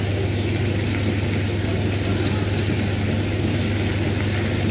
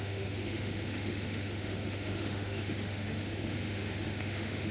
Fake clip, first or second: second